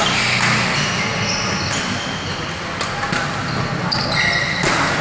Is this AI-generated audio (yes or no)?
no